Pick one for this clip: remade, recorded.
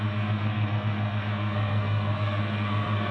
remade